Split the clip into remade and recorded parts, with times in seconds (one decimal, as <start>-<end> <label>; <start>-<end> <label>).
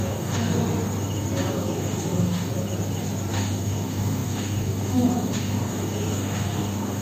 0.0-0.6 remade; 0.6-1.5 recorded; 1.5-2.5 remade; 2.5-3.3 recorded; 3.3-7.0 remade